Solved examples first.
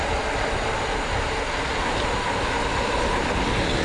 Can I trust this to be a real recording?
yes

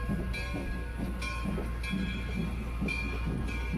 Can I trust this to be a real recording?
yes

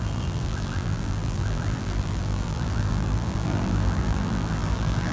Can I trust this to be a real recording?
no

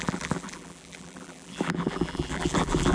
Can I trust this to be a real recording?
no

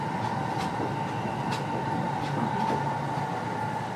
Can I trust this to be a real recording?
yes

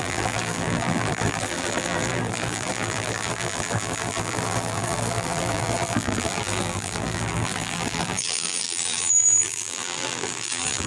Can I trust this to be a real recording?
no